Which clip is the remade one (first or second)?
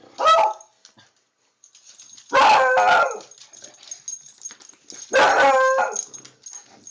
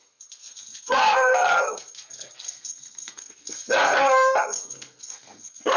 second